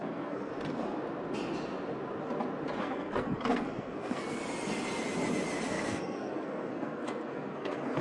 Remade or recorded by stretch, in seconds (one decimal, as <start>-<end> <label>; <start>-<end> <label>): 0.0-0.5 remade; 0.5-2.8 recorded; 2.8-4.4 remade; 4.4-5.7 recorded; 5.7-8.0 remade